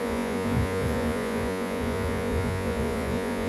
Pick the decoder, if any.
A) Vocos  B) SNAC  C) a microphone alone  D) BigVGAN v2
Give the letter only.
A